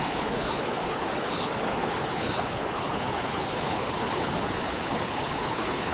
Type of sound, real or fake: fake